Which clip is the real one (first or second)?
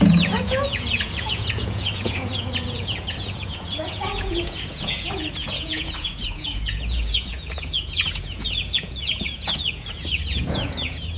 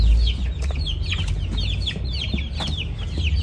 second